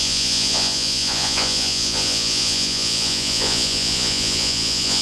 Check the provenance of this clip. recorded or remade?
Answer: remade